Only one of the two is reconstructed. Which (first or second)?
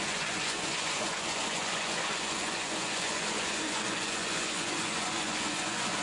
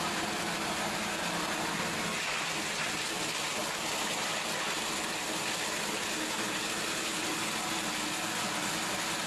first